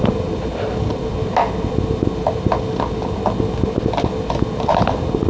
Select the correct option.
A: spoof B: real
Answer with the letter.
B